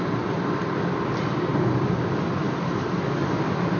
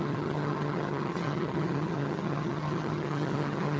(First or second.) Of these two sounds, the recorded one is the first